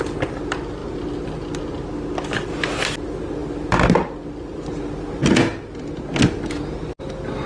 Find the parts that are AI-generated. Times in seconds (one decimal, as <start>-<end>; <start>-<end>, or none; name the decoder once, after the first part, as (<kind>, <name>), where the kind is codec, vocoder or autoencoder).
none